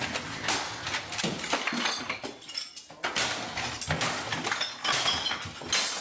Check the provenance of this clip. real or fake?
real